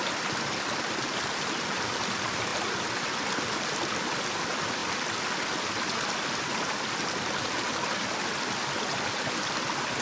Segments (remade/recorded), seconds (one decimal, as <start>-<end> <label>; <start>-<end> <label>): 0.0-10.0 recorded